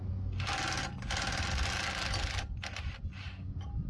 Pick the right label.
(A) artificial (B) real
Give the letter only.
B